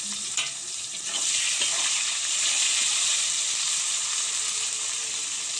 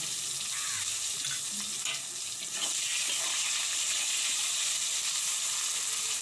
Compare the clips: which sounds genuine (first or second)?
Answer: second